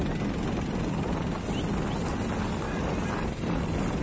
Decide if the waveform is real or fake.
real